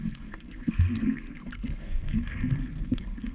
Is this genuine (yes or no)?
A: no